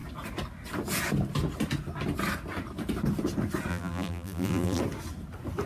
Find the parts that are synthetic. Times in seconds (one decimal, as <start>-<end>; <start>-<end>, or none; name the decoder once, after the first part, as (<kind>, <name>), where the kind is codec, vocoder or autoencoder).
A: 3.7-4.8 (vocoder, BigVGAN v2)